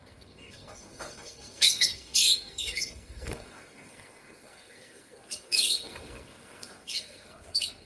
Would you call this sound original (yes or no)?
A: no